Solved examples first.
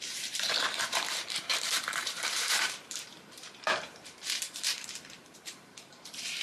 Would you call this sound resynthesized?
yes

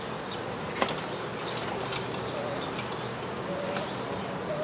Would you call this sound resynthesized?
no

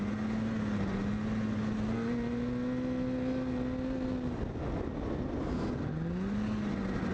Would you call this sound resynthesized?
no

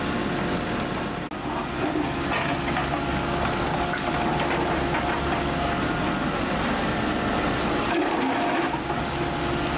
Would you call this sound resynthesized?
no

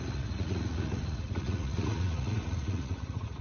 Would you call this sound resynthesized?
yes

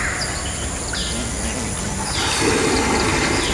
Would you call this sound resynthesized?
no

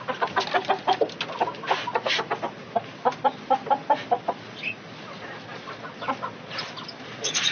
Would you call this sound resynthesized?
no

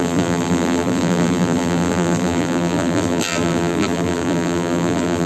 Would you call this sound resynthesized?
yes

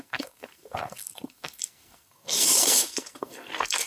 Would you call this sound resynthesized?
yes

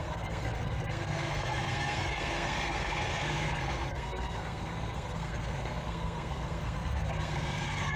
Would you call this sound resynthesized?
yes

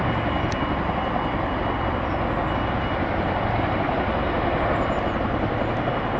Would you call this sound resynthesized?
no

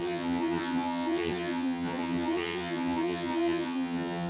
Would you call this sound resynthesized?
yes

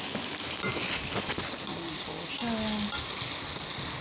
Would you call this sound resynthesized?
no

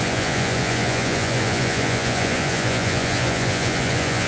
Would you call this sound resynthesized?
yes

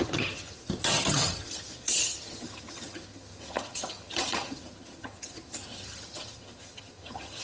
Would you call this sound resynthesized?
yes